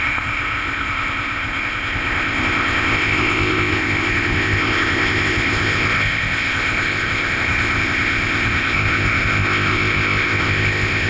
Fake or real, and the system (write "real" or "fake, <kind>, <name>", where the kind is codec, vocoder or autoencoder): fake, codec, ZipCodec